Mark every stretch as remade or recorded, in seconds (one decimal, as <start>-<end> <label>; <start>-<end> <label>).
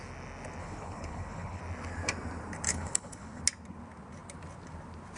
0.0-0.6 recorded; 0.6-1.6 remade; 1.6-2.7 recorded; 2.7-3.4 remade; 3.4-5.2 recorded